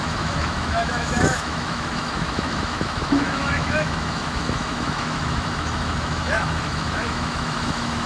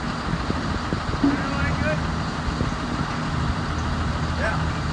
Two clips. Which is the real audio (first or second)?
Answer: second